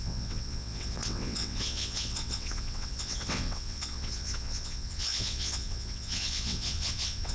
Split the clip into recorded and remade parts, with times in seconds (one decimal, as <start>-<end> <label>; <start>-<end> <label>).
0.0-7.3 remade